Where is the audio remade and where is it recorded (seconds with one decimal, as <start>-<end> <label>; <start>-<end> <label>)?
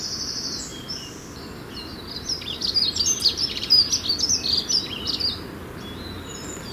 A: 0.0-6.7 recorded